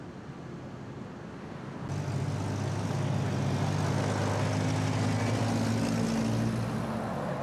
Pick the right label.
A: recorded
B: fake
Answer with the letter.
A